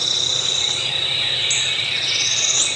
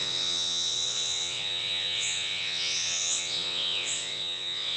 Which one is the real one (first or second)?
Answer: first